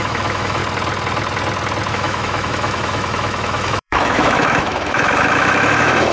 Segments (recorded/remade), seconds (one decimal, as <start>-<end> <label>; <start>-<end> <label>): 0.0-0.6 remade; 0.6-1.9 recorded; 1.9-6.1 remade